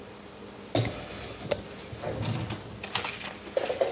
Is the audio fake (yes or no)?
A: no